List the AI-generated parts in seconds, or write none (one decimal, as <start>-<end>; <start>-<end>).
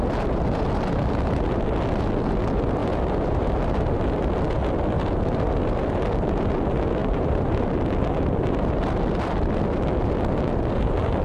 2.8-3.5; 7.0-7.7